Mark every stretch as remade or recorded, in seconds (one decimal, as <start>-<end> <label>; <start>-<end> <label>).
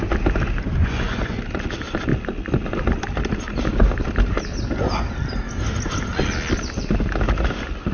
0.0-0.8 recorded; 0.8-1.4 remade; 1.4-7.9 recorded